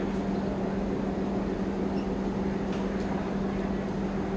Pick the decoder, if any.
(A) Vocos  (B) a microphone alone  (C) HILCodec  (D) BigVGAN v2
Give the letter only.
B